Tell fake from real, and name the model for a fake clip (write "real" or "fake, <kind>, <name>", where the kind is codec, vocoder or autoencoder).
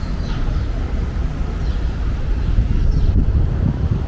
fake, vocoder, BigVGAN v2